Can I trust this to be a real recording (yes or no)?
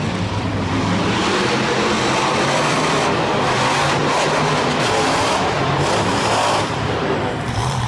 no